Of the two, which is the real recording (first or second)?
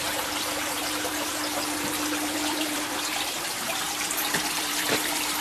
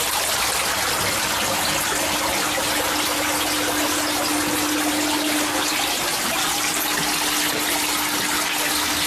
second